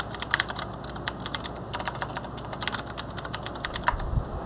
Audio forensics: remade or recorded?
recorded